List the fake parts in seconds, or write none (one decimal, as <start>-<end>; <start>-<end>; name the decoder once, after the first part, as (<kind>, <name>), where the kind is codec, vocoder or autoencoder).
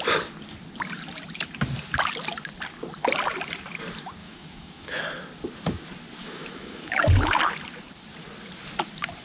4.2-5.0 (autoencoder, DAC-VAE); 6.2-7.0